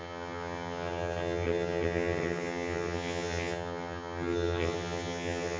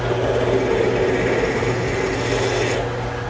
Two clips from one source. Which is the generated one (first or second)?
first